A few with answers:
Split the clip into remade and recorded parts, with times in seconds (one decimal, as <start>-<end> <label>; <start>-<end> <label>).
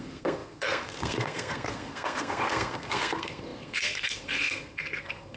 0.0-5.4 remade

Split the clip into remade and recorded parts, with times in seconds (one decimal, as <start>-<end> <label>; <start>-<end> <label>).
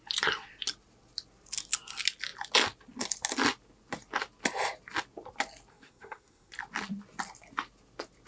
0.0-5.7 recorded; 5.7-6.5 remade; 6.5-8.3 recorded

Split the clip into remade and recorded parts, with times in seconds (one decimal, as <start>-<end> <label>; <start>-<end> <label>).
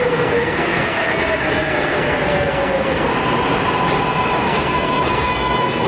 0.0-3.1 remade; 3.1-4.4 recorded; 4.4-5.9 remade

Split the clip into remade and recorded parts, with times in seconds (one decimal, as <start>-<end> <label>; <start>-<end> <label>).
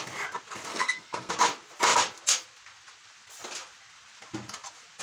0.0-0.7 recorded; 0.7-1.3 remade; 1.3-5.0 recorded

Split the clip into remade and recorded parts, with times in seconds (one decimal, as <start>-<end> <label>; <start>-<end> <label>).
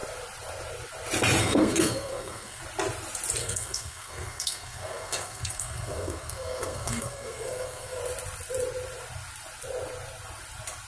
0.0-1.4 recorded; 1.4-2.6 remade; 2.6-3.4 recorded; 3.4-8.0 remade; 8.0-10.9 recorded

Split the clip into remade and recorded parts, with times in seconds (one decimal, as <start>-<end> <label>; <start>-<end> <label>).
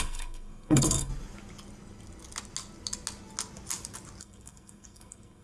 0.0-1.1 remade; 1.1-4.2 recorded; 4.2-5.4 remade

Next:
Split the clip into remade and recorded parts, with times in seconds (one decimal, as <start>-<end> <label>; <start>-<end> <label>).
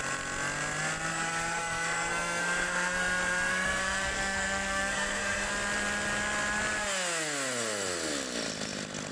0.0-1.1 recorded; 1.1-5.5 remade; 5.5-9.1 recorded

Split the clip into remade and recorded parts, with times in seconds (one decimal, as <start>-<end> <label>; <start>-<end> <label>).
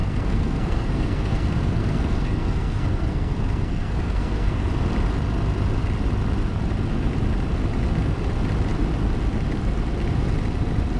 0.0-4.7 remade; 4.7-11.0 recorded